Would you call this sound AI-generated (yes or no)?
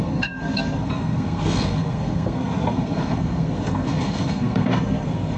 yes